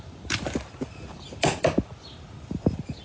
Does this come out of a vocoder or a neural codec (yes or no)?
no